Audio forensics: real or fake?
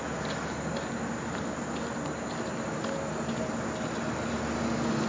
real